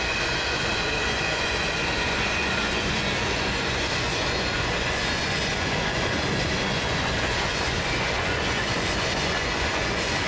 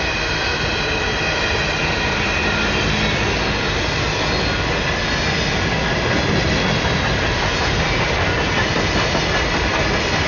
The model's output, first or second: first